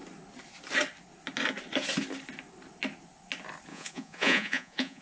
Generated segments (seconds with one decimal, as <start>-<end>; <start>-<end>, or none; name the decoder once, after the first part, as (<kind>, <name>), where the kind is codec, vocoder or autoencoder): 3.7-5.0 (vocoder, Vocos)